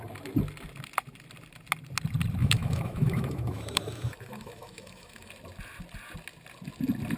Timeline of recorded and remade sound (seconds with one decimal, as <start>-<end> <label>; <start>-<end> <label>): 0.0-2.4 recorded; 2.4-5.3 remade; 5.3-7.2 recorded